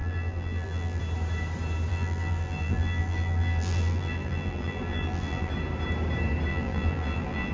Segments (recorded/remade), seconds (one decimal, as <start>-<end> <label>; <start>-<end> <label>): 0.0-1.0 remade; 1.0-1.9 recorded; 1.9-5.5 remade; 5.5-6.5 recorded; 6.5-7.5 remade

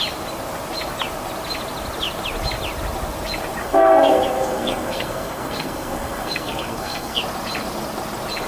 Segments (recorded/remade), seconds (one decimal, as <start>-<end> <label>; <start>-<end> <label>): 0.0-3.6 recorded; 3.6-7.2 remade; 7.2-8.5 recorded

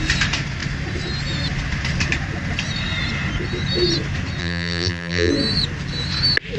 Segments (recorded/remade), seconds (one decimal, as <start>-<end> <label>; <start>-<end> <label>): 0.0-4.4 recorded; 4.4-5.3 remade; 5.3-6.6 recorded

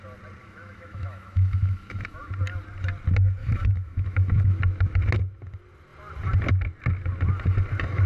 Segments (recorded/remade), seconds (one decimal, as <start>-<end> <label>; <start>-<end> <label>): 0.0-0.4 recorded; 0.4-2.3 remade; 2.3-3.4 recorded; 3.4-4.6 remade; 4.6-8.1 recorded

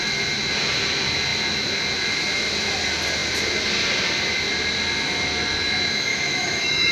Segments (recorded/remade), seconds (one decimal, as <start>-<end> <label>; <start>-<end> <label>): 0.0-6.1 recorded; 6.1-6.9 remade

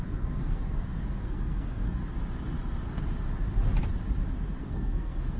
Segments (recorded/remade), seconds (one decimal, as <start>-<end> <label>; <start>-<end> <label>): 0.0-2.0 remade; 2.0-4.6 recorded; 4.6-5.4 remade